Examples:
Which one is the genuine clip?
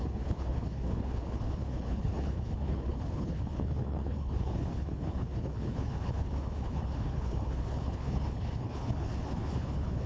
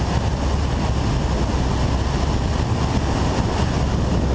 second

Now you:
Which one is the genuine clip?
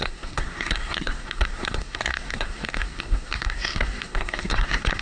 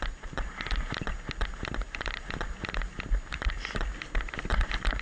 second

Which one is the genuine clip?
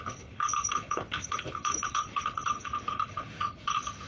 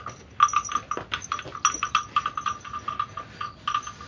second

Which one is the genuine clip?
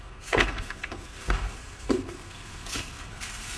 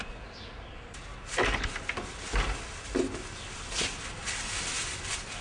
second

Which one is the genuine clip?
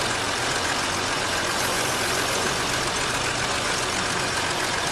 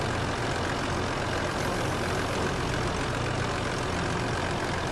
second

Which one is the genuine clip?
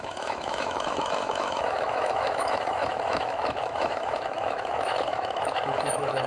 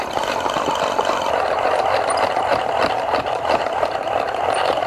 second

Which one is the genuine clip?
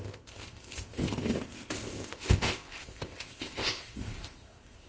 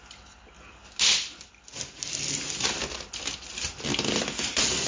second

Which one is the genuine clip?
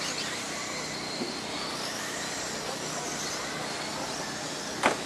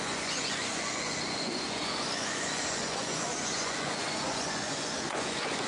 first